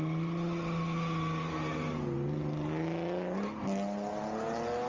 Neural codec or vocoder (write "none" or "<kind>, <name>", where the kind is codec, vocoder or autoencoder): none